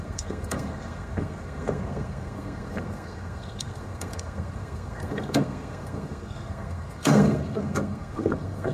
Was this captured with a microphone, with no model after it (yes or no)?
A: no